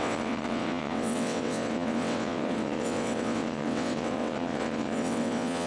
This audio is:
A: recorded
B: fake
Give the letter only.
B